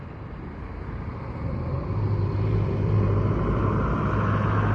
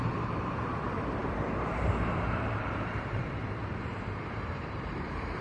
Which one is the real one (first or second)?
first